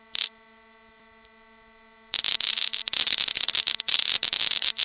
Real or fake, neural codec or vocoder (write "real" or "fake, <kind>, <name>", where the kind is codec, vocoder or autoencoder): real